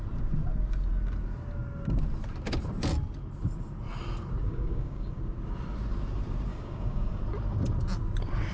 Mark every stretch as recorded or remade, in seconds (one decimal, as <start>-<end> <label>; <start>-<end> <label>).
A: 0.0-4.4 recorded; 4.4-5.2 remade; 5.2-6.5 recorded; 6.5-7.2 remade; 7.2-8.5 recorded